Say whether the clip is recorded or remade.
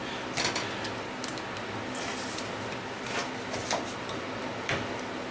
recorded